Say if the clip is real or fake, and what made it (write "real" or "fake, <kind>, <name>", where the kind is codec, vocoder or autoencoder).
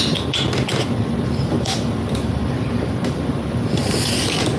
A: fake, vocoder, BigVGAN v2